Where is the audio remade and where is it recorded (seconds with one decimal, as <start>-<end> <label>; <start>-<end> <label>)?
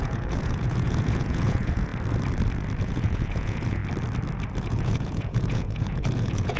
0.0-1.9 remade; 1.9-2.8 recorded; 2.8-3.8 remade; 3.8-4.6 recorded; 4.6-6.6 remade